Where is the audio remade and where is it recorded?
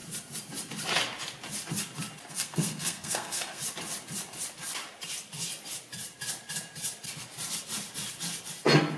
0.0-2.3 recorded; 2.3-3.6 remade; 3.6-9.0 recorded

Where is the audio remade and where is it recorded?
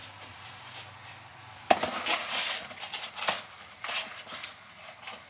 0.0-0.6 remade; 0.6-1.3 recorded; 1.3-4.5 remade; 4.5-5.3 recorded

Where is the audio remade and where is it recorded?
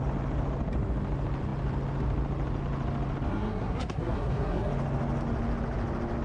0.0-3.3 recorded; 3.3-4.7 remade; 4.7-6.2 recorded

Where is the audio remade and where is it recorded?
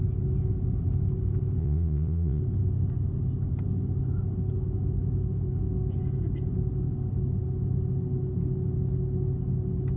0.0-1.6 recorded; 1.6-2.4 remade; 2.4-10.0 recorded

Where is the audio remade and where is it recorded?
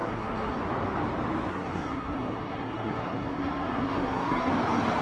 0.0-0.6 remade; 0.6-1.5 recorded; 1.5-4.5 remade; 4.5-5.0 recorded